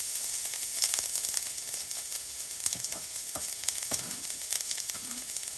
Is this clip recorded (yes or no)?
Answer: no